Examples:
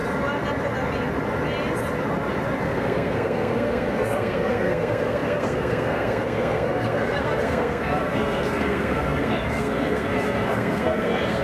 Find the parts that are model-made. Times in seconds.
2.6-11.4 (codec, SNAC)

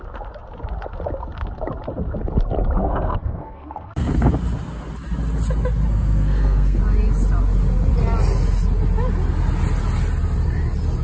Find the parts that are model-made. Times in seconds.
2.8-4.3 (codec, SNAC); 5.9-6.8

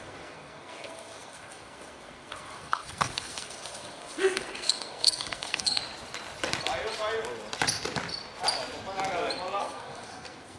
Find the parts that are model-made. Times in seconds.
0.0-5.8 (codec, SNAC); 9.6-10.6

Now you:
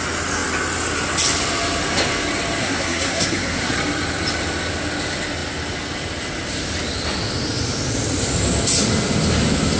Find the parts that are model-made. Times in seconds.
2.6-3.7 (codec, SNAC)

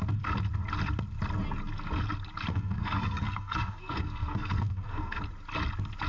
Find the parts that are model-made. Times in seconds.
2.5-5.2 (codec, SNAC)

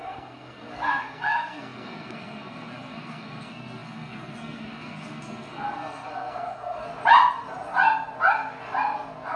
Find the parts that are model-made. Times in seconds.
0.0-6.9 (codec, SNAC)

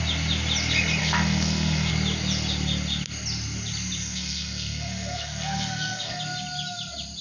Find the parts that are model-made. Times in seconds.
1.0-1.9 (codec, SNAC); 4.0-6.2

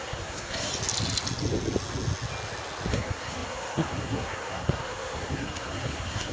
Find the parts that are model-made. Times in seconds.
0.0-0.7 (codec, SNAC); 2.9-6.3